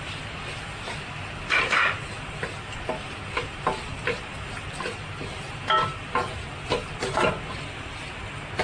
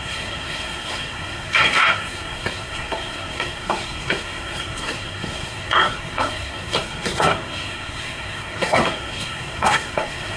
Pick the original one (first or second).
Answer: first